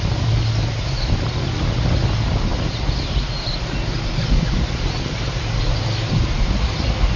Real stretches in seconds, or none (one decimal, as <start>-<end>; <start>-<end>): 0.0-7.2